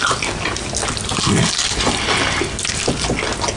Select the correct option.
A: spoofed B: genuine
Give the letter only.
B